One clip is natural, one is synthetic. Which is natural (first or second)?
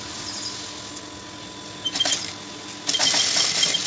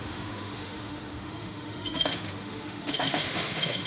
first